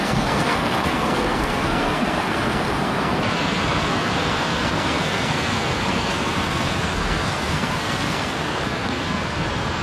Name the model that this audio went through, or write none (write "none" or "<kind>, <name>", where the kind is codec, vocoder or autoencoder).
codec, SNAC